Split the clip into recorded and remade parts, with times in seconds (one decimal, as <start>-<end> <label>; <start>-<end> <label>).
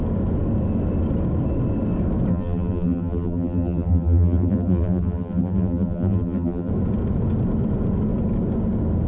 0.0-2.3 recorded; 2.3-6.7 remade; 6.7-9.1 recorded